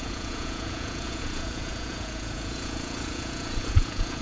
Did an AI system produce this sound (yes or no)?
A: yes